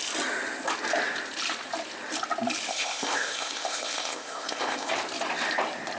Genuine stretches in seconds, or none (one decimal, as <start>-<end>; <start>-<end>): 0.0-2.7; 4.9-6.0